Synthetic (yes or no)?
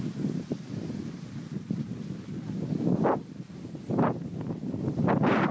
no